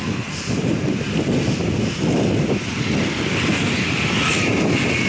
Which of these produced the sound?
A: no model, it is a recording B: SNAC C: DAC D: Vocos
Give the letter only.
A